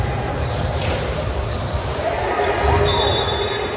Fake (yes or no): no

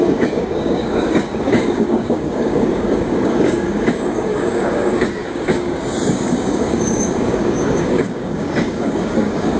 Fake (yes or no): yes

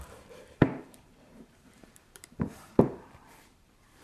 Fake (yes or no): yes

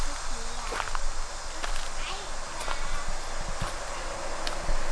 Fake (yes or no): no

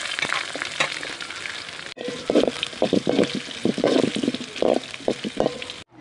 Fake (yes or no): no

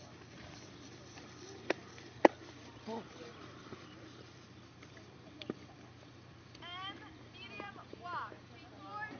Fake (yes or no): yes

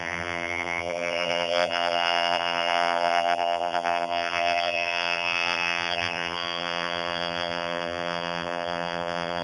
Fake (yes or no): yes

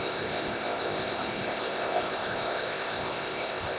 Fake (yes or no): yes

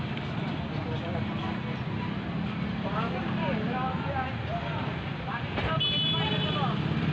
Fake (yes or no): no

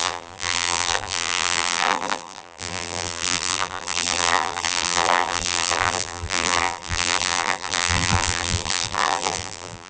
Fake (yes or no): yes